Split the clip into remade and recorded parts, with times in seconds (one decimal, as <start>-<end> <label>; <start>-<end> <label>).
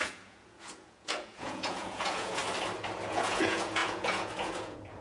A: 0.0-2.4 remade; 2.4-3.1 recorded; 3.1-5.0 remade